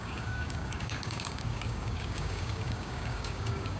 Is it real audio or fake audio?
fake